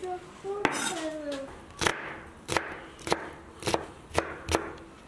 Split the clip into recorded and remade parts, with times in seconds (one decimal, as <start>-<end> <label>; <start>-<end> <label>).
0.0-5.1 recorded